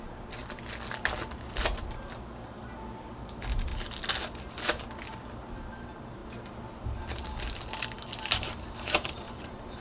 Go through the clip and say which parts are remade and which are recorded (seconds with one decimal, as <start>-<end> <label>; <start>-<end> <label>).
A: 0.0-0.4 remade; 0.4-3.1 recorded; 3.1-3.7 remade; 3.7-5.5 recorded; 5.5-6.2 remade; 6.2-8.2 recorded; 8.2-9.8 remade